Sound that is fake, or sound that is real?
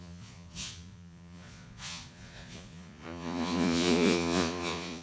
fake